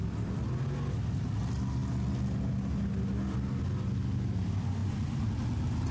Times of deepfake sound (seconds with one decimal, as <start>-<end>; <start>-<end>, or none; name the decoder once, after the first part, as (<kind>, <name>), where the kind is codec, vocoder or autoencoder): 4.8-5.3 (vocoder, BigVGAN v2)